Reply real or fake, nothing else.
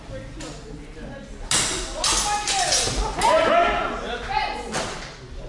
real